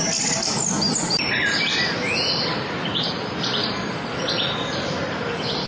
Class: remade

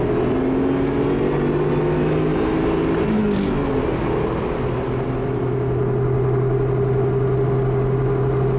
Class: recorded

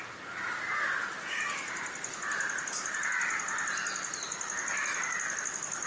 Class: recorded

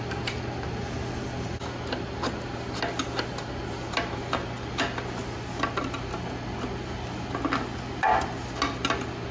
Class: recorded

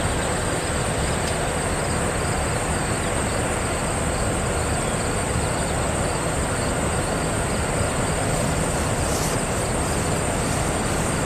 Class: recorded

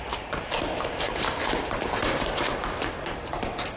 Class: remade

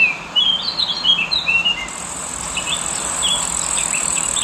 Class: remade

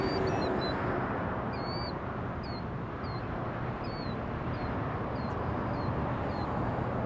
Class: recorded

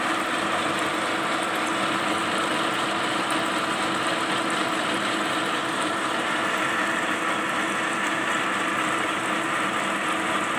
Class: recorded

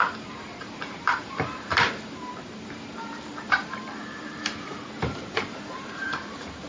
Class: remade